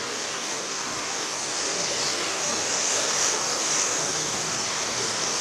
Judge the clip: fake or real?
fake